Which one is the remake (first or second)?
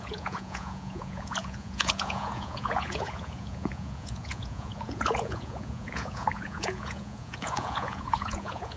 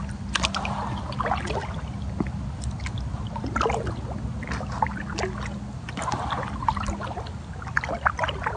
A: first